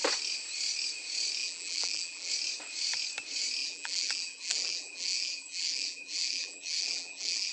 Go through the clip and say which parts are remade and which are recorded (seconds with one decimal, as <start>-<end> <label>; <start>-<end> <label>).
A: 0.0-1.4 recorded; 1.4-2.3 remade; 2.3-3.6 recorded; 3.6-7.5 remade